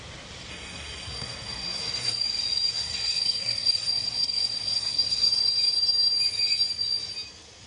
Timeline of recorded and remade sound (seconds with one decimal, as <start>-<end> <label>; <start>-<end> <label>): 0.0-0.5 recorded; 0.5-2.2 remade; 2.2-2.7 recorded; 2.7-5.3 remade; 5.3-7.7 recorded